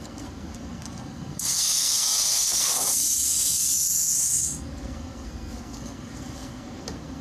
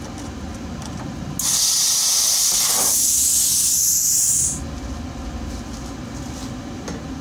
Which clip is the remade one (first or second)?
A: first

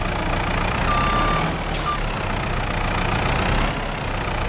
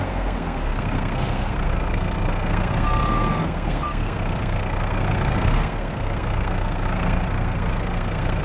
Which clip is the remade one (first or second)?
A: second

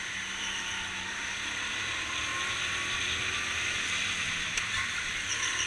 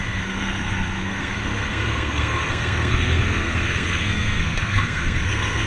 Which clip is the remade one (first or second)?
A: second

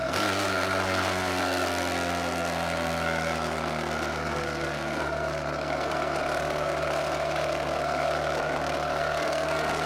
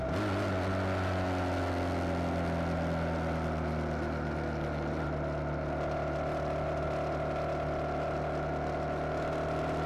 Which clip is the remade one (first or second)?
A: first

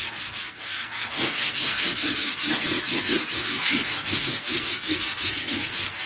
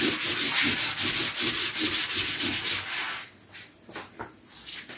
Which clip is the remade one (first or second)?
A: first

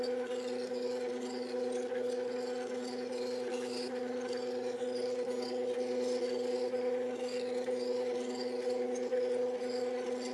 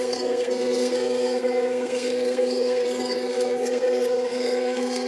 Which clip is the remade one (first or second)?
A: second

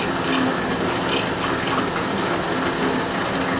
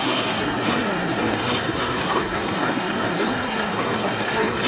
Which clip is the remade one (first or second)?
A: second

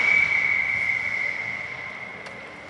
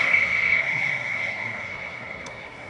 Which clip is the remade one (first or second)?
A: second